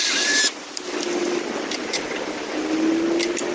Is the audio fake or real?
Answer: real